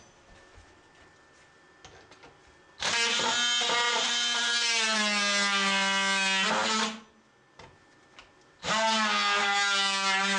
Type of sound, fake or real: real